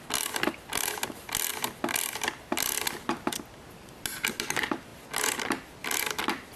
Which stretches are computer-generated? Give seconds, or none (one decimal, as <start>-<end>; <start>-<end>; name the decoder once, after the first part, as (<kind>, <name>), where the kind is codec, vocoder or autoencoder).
none